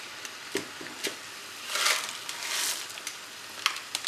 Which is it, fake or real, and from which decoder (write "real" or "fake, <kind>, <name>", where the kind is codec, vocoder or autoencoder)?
real